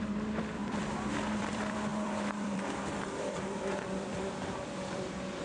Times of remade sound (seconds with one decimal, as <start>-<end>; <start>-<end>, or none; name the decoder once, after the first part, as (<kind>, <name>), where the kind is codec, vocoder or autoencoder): 0.0-5.4 (vocoder, BigVGAN v2)